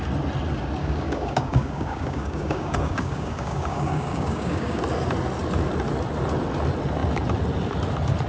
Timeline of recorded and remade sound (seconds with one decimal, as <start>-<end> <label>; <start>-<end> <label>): 0.0-0.8 recorded; 0.8-4.8 remade; 4.8-8.3 recorded